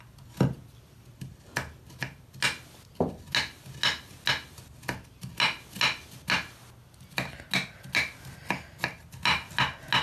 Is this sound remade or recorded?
recorded